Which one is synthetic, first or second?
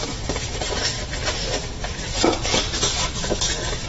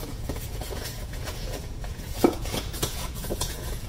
second